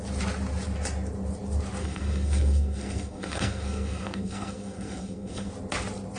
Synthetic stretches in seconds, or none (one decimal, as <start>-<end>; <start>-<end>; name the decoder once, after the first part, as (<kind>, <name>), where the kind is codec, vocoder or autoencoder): 1.8-5.5 (codec, SNAC)